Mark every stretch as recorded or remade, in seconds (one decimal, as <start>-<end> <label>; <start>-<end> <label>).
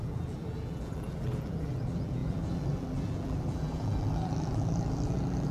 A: 0.0-5.5 remade